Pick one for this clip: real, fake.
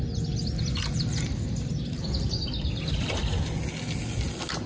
real